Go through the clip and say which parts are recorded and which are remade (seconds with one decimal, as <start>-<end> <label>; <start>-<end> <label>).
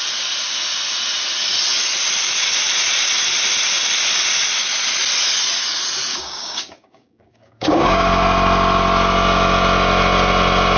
0.0-6.1 recorded; 6.1-8.1 remade; 8.1-10.8 recorded